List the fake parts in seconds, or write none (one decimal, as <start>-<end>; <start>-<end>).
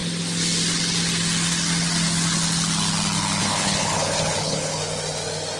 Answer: 3.4-4.8